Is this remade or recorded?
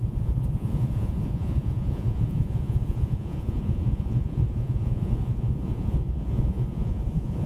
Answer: remade